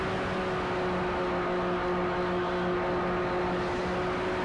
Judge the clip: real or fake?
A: real